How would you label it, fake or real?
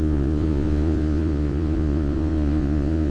fake